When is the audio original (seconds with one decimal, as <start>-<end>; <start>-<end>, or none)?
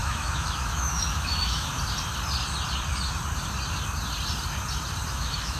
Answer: 1.7-5.1